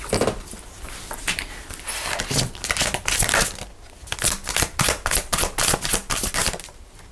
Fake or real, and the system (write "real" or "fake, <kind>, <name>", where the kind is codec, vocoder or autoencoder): real